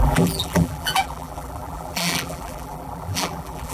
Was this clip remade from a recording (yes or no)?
yes